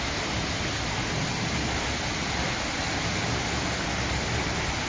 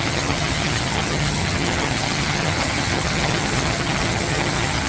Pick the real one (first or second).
first